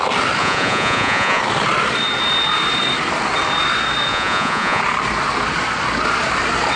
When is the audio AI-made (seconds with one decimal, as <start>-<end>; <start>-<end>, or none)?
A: 0.4-1.4; 4.1-4.8